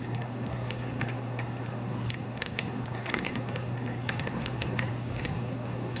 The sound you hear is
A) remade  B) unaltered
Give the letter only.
A